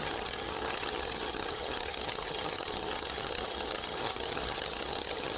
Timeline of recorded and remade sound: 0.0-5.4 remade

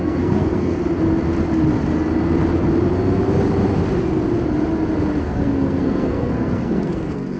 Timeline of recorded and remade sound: 0.0-0.8 remade; 0.8-5.2 recorded; 5.2-7.4 remade

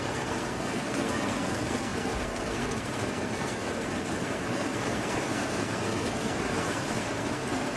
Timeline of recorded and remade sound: 0.0-7.8 remade